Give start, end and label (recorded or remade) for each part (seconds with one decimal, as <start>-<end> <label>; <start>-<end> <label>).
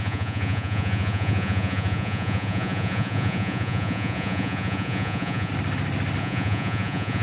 0.0-5.5 remade; 5.5-6.2 recorded; 6.2-7.2 remade